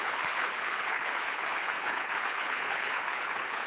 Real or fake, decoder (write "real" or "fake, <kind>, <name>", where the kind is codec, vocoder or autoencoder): fake, codec, HILCodec